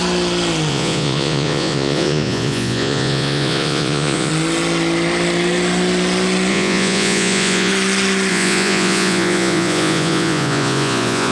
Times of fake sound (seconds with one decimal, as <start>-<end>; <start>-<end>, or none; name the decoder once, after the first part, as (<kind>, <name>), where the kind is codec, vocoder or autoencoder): 0.7-4.3 (vocoder, Vocos); 6.5-7.7; 8.3-11.3